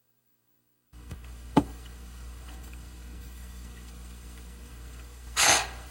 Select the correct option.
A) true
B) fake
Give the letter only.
B